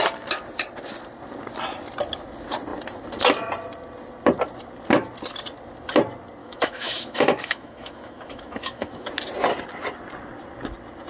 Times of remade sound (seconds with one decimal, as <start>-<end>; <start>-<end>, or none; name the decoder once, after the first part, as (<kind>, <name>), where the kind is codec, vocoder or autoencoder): 6.4-9.1 (autoencoder, DAC-VAE)